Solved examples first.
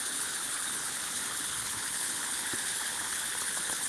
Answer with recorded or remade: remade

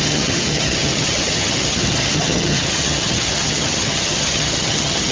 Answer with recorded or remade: remade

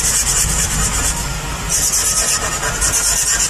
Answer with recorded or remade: recorded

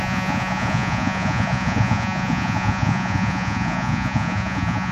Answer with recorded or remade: remade